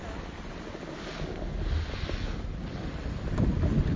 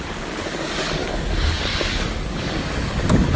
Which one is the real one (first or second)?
first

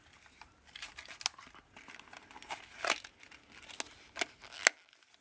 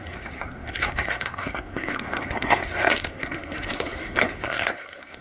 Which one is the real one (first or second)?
first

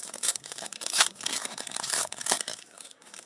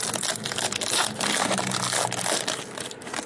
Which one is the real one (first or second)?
second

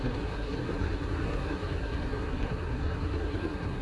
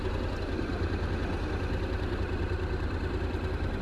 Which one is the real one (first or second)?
second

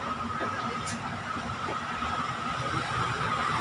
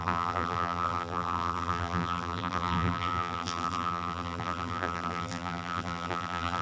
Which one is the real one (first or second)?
first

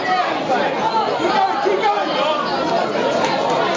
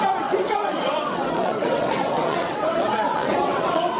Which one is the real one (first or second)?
first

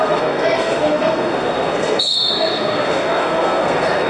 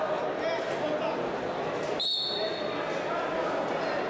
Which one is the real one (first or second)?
second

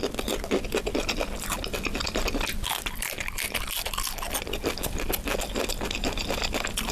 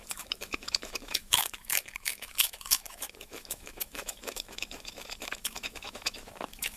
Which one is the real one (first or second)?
first